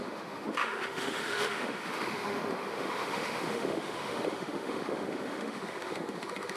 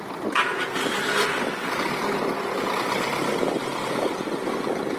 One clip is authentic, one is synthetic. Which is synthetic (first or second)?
first